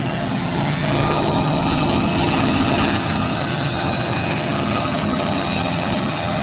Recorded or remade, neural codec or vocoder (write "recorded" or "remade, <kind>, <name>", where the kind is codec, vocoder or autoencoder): remade, vocoder, HiFi-GAN